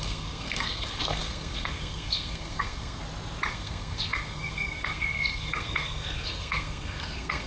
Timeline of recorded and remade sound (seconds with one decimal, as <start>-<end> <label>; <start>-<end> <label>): 0.0-3.0 remade; 3.0-3.5 recorded; 3.5-7.5 remade

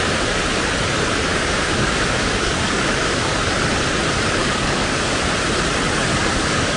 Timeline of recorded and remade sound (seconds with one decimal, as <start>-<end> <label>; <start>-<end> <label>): 0.0-1.3 recorded; 1.3-3.3 remade; 3.3-4.4 recorded; 4.4-5.2 remade; 5.2-6.1 recorded; 6.1-6.8 remade

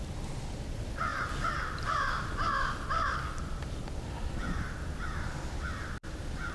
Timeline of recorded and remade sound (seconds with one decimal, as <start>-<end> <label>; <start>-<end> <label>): 0.0-6.5 recorded

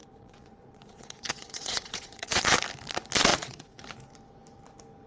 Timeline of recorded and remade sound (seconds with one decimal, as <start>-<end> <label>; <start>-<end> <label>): 0.0-2.4 remade; 2.4-3.3 recorded; 3.3-3.8 remade; 3.8-5.1 recorded

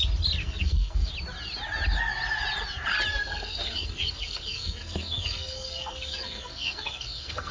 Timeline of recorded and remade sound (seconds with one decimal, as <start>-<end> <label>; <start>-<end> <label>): 0.0-0.4 recorded; 0.4-1.1 remade; 1.1-3.1 recorded; 3.1-7.5 remade

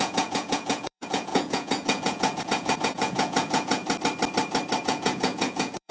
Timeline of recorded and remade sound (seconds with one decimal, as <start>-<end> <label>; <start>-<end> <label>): 0.0-3.8 remade; 3.8-4.8 recorded; 4.8-5.9 remade

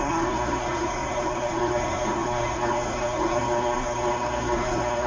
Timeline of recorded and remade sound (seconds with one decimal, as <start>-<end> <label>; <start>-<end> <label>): 0.0-5.1 remade